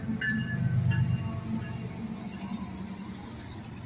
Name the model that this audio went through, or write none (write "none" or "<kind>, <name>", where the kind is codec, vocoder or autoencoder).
none